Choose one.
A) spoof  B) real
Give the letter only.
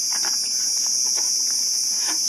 B